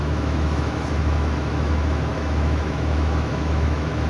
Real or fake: fake